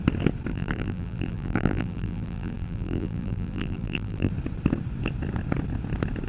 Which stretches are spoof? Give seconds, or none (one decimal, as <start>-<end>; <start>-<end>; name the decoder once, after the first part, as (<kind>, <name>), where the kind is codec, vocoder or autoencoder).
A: 0.5-4.3 (vocoder, BigVGAN v2)